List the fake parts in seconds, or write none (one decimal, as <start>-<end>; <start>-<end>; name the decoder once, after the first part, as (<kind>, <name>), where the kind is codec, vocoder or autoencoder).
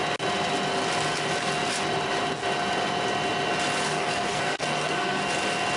3.9-5.2 (codec, SNAC)